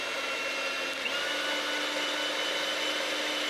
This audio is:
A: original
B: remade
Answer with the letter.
A